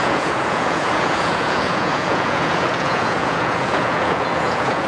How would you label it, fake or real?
fake